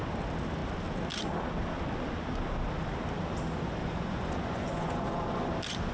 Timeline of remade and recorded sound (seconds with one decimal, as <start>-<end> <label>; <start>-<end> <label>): 0.0-3.8 recorded; 3.8-5.5 remade; 5.5-5.9 recorded